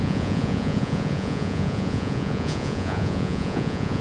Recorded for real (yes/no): no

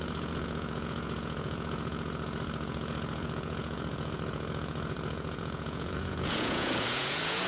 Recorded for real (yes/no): no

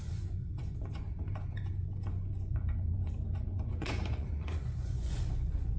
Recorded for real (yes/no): no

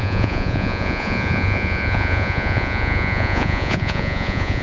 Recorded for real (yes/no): no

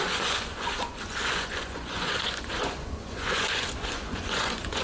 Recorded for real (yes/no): no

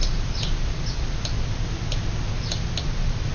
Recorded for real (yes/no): yes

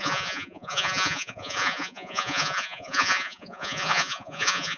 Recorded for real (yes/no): no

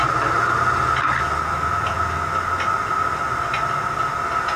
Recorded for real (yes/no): yes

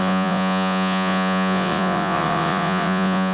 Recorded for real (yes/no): no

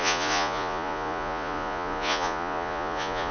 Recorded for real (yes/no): no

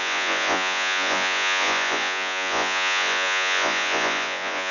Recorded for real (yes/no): no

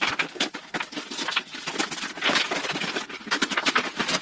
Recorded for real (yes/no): yes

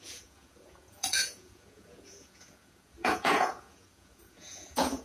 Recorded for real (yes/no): no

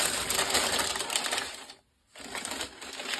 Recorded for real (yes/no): yes